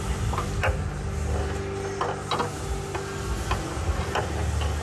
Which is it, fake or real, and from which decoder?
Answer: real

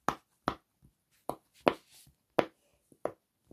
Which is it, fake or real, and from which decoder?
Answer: real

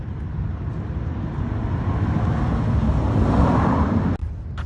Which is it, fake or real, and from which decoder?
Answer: real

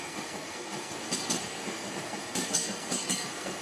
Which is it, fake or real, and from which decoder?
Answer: fake, codec, SNAC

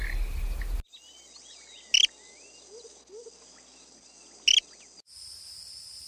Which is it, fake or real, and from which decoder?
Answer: real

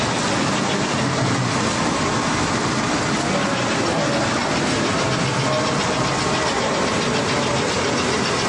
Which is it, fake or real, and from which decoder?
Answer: real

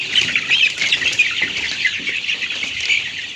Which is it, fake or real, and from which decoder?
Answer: real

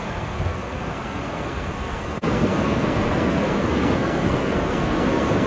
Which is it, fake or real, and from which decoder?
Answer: fake, codec, SNAC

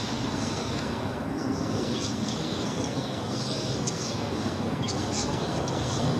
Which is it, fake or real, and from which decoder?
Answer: fake, codec, SNAC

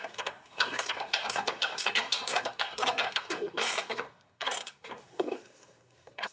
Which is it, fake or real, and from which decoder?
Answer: fake, codec, SNAC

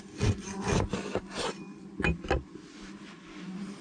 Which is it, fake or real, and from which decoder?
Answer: real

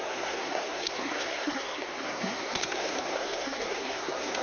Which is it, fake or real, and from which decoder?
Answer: fake, codec, SNAC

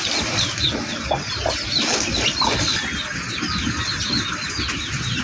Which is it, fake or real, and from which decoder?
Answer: real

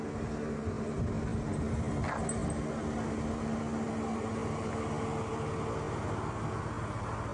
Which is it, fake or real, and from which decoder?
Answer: real